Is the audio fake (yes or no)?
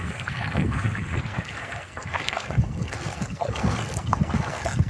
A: yes